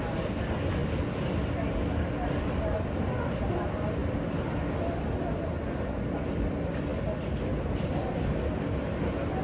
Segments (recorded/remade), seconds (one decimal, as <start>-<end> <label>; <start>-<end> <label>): 0.0-9.4 recorded